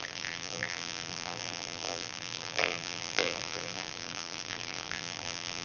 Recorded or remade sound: remade